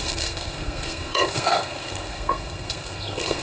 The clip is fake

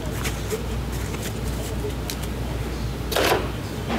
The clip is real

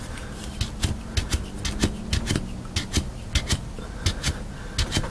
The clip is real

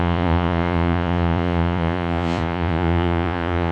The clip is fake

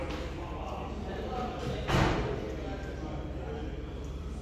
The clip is fake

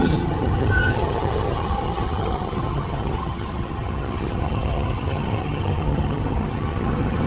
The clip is fake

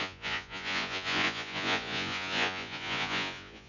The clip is fake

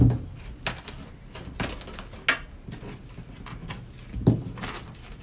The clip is real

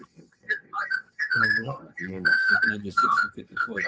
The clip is fake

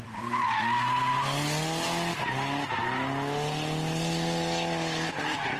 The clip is real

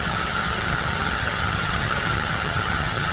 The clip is fake